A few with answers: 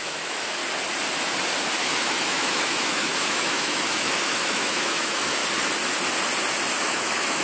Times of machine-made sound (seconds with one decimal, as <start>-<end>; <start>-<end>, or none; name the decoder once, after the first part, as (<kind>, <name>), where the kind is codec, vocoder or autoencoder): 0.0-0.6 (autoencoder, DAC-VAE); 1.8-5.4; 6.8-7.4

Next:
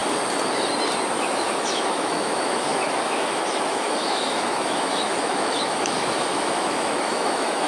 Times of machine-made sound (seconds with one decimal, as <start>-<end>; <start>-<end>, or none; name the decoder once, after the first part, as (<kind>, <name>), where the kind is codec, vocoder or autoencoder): 1.2-7.7 (autoencoder, DAC-VAE)

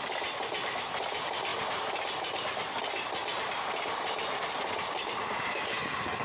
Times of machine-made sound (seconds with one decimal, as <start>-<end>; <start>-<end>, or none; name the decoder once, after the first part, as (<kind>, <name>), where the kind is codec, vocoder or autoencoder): none

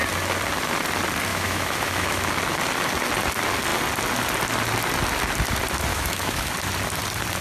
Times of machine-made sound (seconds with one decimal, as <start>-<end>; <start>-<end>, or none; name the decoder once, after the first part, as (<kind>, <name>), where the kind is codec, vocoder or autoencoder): 1.3-2.3 (autoencoder, DAC-VAE); 5.9-6.5

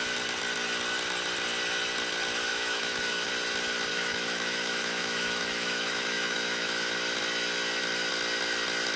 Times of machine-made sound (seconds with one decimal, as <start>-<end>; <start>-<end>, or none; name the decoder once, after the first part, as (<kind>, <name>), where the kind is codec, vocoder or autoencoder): 2.5-3.3 (autoencoder, DAC-VAE); 3.9-6.9